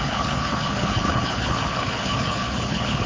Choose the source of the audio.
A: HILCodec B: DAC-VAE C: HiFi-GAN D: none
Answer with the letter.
A